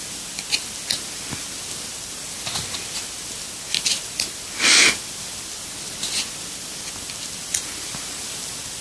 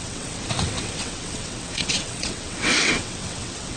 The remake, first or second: second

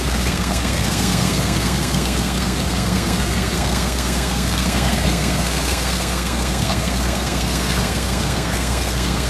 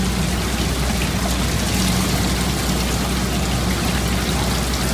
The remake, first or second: first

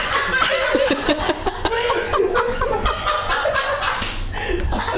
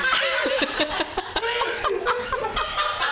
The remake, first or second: first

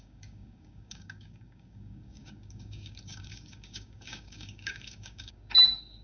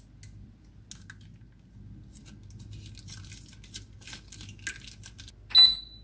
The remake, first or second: first